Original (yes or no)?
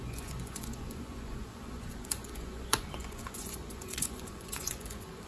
no